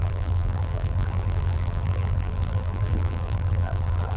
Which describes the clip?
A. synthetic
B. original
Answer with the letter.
A